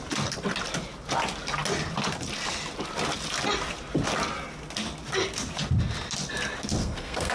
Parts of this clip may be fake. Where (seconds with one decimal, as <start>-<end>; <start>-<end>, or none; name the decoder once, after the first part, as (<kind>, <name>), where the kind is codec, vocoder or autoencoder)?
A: 6.8-7.3 (codec, SNAC)